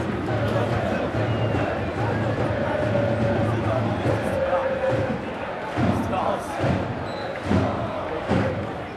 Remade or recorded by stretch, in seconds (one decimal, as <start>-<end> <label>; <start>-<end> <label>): 0.0-7.2 recorded; 7.2-8.5 remade; 8.5-9.0 recorded